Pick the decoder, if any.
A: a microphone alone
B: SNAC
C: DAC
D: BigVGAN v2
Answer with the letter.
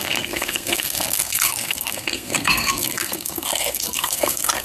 B